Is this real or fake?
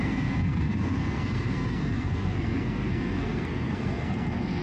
fake